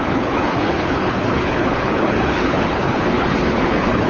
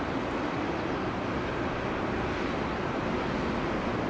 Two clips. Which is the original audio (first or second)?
second